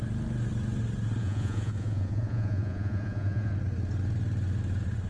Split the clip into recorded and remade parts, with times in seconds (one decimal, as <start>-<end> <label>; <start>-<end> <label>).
0.0-1.2 recorded; 1.2-3.5 remade; 3.5-5.1 recorded